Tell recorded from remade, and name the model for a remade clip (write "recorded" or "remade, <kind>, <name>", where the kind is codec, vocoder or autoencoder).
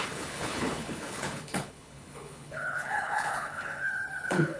remade, codec, HILCodec